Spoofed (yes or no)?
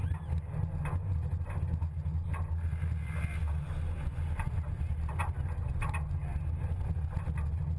no